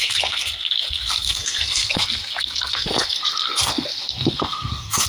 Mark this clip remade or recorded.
remade